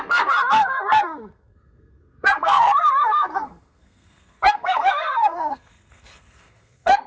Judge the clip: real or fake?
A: fake